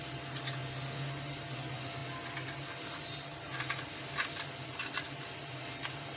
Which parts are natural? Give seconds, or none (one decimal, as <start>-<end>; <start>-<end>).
0.0-6.2